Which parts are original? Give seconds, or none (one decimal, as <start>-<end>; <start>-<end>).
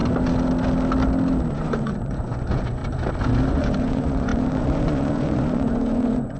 0.0-1.5; 2.8-3.5